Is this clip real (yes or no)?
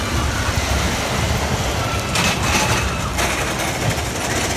yes